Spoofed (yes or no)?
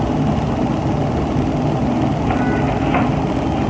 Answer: no